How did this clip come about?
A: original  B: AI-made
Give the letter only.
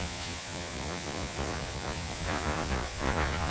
B